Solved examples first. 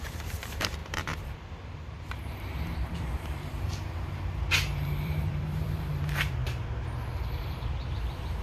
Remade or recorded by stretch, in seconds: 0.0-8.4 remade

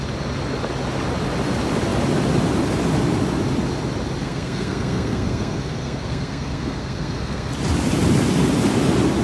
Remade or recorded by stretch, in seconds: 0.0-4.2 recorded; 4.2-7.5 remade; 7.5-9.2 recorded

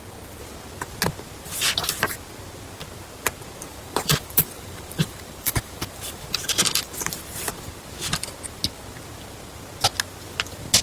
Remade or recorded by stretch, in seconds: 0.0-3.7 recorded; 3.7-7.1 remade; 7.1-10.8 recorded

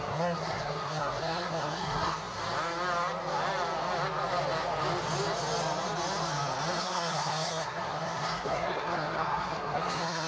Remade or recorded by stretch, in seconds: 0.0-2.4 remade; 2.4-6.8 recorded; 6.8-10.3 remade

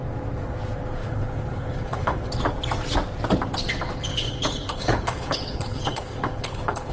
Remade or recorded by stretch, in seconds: 0.0-1.0 recorded; 1.0-2.3 remade; 2.3-4.1 recorded; 4.1-6.9 remade

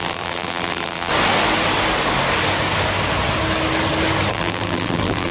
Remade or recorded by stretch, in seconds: 0.0-1.1 remade; 1.1-4.3 recorded; 4.3-5.3 remade